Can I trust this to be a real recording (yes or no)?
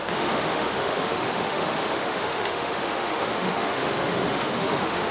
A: no